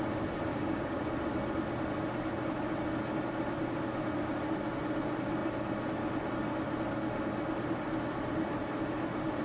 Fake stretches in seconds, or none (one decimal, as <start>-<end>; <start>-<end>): 0.5-1.0